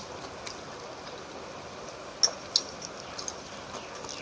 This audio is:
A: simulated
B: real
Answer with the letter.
B